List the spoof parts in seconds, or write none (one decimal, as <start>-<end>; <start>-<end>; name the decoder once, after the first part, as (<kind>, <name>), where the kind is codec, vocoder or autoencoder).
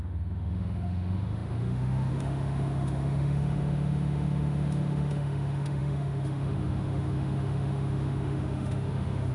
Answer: 0.0-9.3 (autoencoder, DAC-VAE)